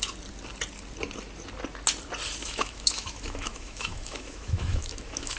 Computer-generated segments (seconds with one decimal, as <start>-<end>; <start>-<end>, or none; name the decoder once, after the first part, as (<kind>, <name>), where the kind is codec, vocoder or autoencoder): 2.4-5.4 (autoencoder, DAC-VAE)